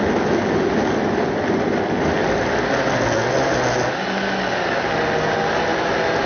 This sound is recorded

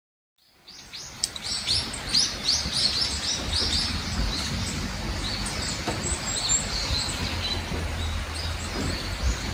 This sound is recorded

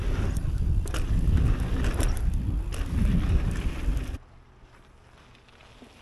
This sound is recorded